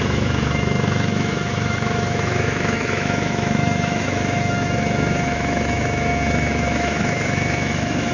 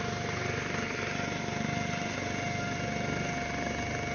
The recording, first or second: second